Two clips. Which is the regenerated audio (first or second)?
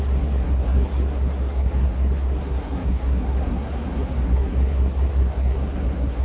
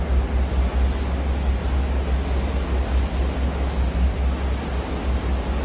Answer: first